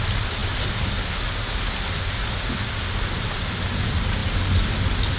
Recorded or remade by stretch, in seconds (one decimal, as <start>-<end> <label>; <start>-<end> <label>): 0.0-4.2 recorded; 4.2-4.7 remade; 4.7-5.2 recorded